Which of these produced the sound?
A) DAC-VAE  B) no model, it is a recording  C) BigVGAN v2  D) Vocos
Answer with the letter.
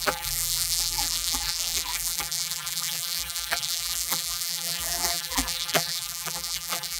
C